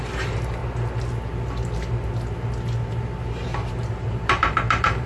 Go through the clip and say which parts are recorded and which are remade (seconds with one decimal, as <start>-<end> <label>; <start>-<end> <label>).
0.0-0.6 remade; 0.6-3.7 recorded; 3.7-5.1 remade